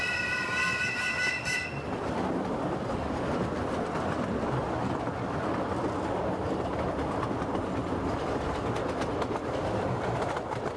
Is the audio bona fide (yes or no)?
yes